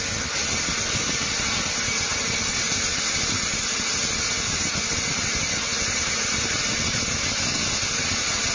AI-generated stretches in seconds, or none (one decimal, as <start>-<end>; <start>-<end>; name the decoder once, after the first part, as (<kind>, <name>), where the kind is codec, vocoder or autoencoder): none